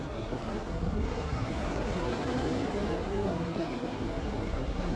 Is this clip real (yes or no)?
no